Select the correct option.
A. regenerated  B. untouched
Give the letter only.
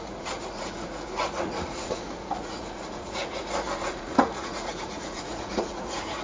A